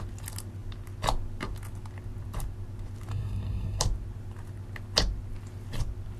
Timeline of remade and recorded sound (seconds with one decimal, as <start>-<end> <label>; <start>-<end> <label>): 0.0-3.1 recorded; 3.1-3.8 remade; 3.8-6.2 recorded